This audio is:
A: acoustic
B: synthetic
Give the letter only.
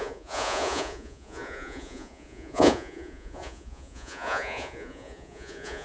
B